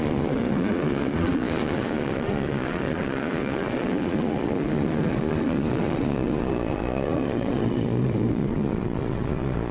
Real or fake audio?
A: fake